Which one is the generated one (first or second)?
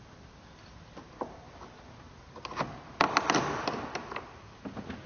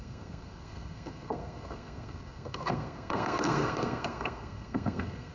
second